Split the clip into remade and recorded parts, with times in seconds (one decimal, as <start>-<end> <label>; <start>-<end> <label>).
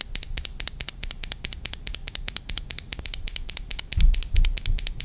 0.0-0.9 recorded; 0.9-3.8 remade; 3.8-5.0 recorded